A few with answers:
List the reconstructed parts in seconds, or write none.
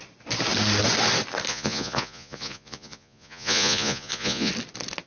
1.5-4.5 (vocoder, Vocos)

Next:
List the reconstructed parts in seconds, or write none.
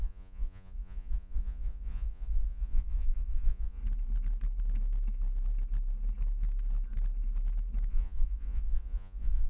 0.0-3.8 (vocoder, Vocos); 7.9-9.5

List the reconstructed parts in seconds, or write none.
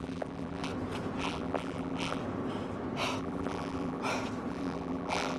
0.0-0.7 (vocoder, BigVGAN v2); 1.2-2.2; 3.2-4.0; 4.5-5.4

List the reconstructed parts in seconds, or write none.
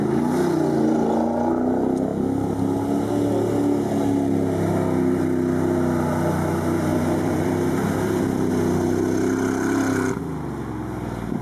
6.9-8.5 (vocoder, BigVGAN v2)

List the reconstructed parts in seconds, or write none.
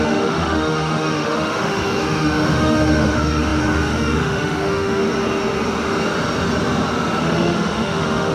0.0-5.0 (autoencoder, DAC-VAE); 7.2-8.3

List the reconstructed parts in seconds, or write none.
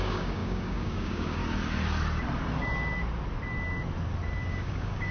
0.0-1.4 (codec, DAC); 4.5-5.1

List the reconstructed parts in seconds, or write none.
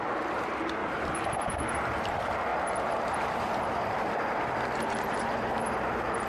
0.8-1.7 (vocoder, BigVGAN v2); 2.5-6.3